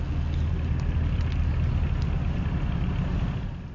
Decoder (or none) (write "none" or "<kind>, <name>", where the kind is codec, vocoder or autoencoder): none